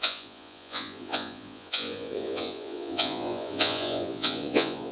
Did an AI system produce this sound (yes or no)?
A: yes